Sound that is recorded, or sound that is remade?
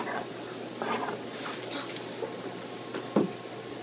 recorded